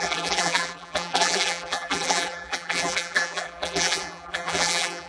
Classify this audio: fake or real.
fake